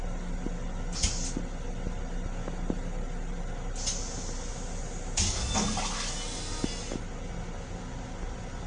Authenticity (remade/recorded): recorded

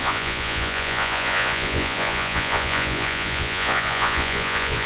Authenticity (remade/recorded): remade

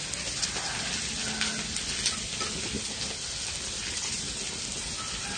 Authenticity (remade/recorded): recorded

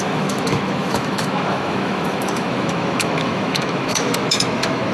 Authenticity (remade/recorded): remade